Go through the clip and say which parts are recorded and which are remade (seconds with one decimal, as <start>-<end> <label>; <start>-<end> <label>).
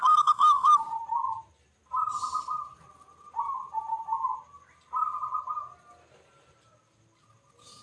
0.0-0.7 remade; 0.7-7.8 recorded